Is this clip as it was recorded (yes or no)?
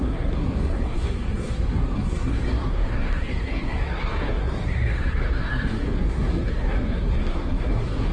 no